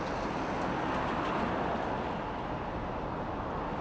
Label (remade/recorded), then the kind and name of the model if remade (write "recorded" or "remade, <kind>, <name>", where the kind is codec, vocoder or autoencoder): recorded